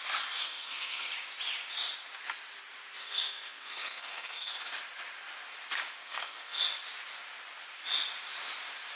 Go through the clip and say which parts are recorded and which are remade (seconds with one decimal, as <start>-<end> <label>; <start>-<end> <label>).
0.0-0.4 recorded; 0.4-1.1 remade; 1.1-3.0 recorded; 3.0-4.5 remade; 4.5-6.0 recorded; 6.0-6.6 remade; 6.6-9.0 recorded